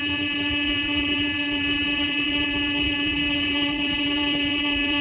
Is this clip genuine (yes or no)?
no